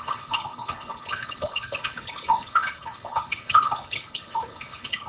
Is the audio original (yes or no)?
no